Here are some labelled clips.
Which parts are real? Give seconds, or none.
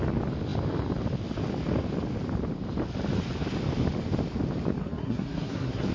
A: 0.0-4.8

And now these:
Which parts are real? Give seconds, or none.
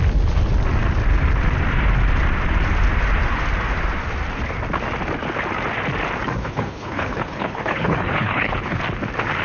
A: 0.0-6.4; 8.8-9.4